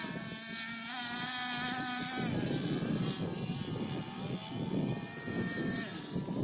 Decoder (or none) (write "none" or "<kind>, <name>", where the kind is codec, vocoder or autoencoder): none